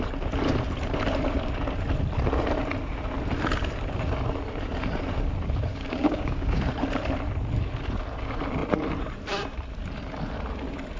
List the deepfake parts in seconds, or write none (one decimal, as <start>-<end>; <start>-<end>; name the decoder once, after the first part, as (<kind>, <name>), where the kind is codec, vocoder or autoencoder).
5.7-6.6 (codec, DAC)